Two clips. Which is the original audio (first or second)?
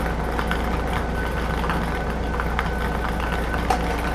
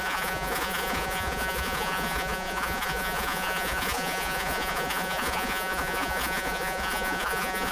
first